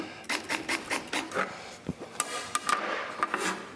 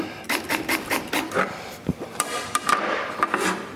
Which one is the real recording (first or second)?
first